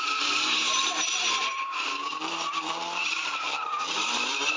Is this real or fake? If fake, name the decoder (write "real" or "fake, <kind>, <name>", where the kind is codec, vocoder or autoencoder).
fake, vocoder, BigVGAN v2